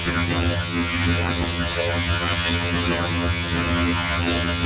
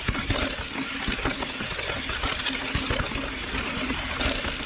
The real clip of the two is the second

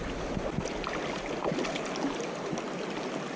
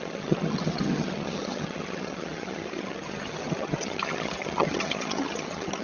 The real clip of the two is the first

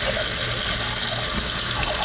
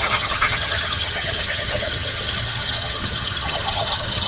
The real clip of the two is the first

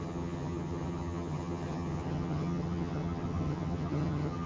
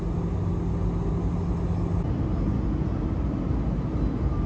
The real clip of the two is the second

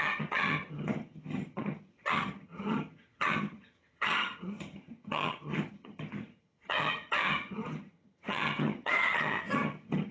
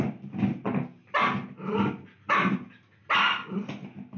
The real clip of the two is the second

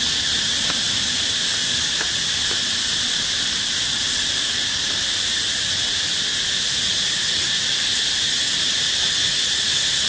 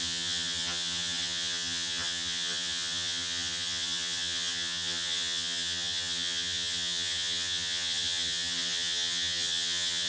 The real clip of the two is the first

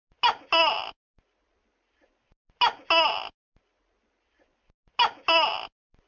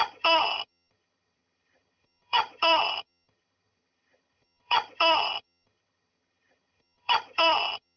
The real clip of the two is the first